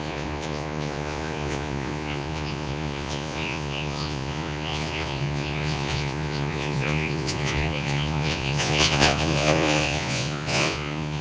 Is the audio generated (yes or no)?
yes